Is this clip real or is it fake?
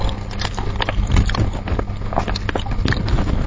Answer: real